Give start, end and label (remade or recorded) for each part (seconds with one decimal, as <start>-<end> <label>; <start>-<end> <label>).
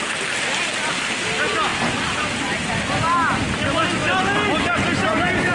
0.0-5.5 recorded